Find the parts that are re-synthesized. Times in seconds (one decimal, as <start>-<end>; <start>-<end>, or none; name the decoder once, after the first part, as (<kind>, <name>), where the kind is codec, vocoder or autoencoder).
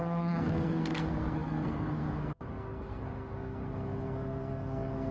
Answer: 0.0-5.1 (codec, SNAC)